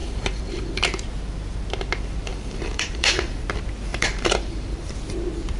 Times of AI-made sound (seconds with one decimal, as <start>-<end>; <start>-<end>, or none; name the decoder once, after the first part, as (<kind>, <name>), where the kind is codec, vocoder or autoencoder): 0.0-0.7 (vocoder, BigVGAN v2); 2.3-3.4; 3.9-4.9